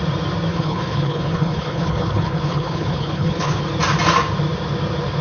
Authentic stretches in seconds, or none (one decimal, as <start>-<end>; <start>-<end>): 0.0-0.5; 3.6-5.2